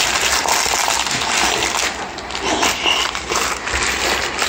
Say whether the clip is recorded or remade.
recorded